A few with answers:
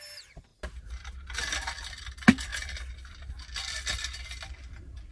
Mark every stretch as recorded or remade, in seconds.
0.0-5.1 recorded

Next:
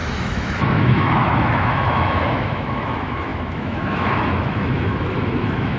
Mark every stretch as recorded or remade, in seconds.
0.0-5.8 remade

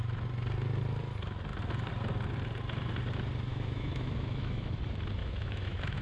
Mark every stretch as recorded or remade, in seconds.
0.0-3.5 recorded; 3.5-4.7 remade; 4.7-5.2 recorded; 5.2-6.0 remade